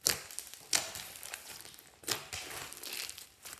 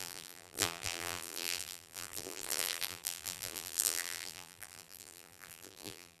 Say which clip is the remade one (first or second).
second